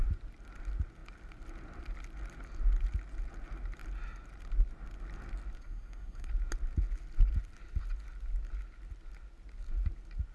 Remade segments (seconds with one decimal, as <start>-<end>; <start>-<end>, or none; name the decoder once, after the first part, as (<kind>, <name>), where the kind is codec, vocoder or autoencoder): 5.6-6.3 (codec, SNAC)